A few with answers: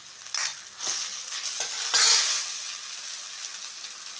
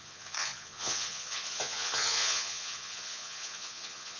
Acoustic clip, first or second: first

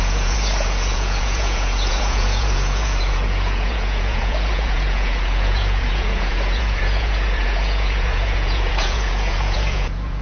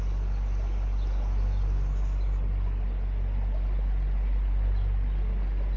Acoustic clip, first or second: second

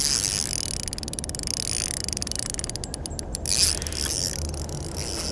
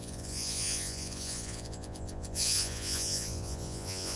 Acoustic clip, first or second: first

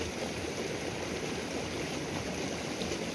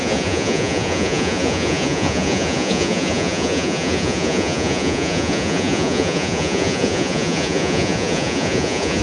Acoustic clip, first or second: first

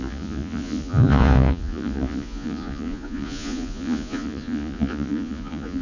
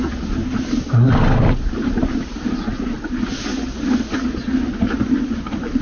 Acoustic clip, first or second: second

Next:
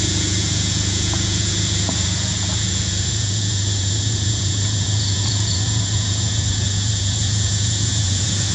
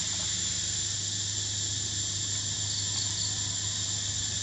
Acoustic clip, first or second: second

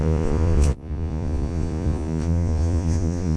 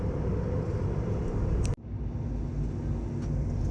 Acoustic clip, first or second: second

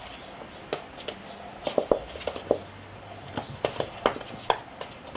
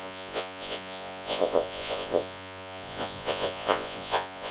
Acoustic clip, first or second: first